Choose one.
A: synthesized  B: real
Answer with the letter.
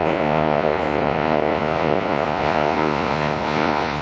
A